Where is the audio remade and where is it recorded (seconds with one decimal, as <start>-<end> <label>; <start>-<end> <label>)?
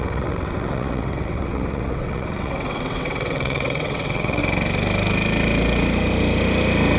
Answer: 0.0-4.4 remade; 4.4-7.0 recorded